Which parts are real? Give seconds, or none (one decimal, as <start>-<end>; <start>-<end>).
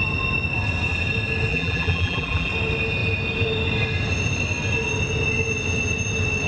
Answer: 0.0-1.5; 2.5-6.5